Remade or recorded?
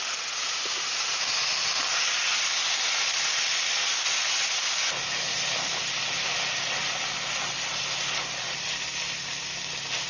recorded